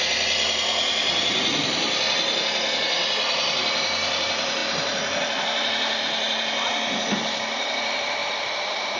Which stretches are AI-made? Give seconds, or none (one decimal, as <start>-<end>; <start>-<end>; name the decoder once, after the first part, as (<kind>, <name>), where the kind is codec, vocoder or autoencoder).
8.2-9.0 (vocoder, BigVGAN v2)

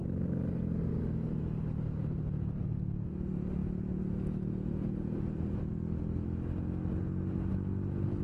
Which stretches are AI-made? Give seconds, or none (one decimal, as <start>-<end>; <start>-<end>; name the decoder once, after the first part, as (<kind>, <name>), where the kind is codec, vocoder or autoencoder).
none

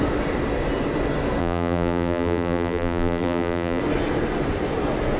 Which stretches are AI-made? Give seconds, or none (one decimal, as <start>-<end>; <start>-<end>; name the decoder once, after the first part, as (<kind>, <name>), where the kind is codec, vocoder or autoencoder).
1.4-3.8 (vocoder, BigVGAN v2)

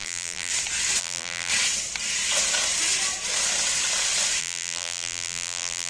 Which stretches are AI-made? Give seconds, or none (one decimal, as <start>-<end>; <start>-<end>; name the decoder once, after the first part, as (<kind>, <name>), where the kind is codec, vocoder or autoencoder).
0.0-0.5 (vocoder, BigVGAN v2); 1.0-1.5; 4.4-5.9

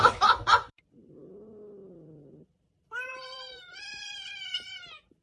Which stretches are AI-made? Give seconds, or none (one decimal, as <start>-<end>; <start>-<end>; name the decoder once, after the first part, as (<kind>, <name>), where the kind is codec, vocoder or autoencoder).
0.5-1.2 (vocoder, BigVGAN v2); 1.8-5.2

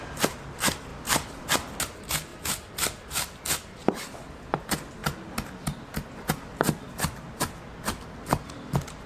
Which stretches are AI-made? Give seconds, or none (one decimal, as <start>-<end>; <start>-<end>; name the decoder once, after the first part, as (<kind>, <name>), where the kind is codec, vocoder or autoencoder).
0.9-1.5 (vocoder, BigVGAN v2); 2.3-4.4

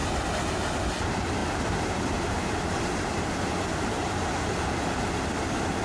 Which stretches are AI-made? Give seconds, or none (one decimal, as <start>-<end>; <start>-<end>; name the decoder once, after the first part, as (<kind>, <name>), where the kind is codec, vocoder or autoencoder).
1.4-4.5 (vocoder, BigVGAN v2)